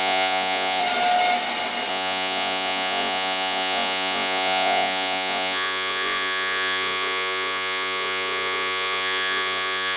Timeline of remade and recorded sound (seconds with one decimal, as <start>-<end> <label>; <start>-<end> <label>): 0.0-0.8 remade; 0.8-1.9 recorded; 1.9-10.0 remade